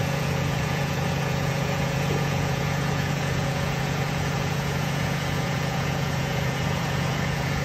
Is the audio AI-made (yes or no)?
yes